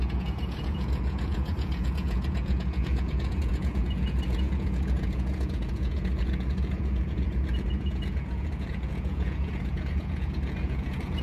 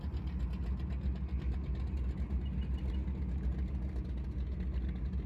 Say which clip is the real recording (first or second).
second